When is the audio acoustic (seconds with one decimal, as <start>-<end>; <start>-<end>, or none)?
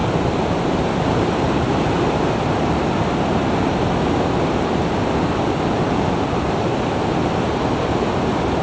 2.5-8.6